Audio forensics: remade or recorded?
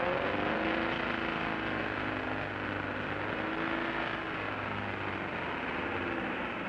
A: recorded